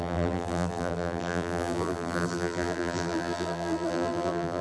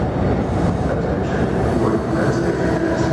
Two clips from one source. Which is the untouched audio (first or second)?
second